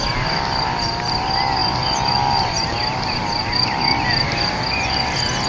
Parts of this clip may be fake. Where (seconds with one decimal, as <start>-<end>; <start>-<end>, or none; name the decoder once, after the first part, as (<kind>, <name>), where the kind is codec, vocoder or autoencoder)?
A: 1.6-4.6 (vocoder, BigVGAN v2)